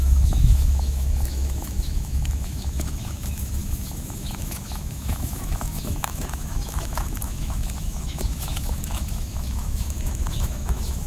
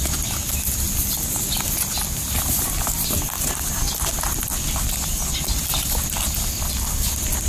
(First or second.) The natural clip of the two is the second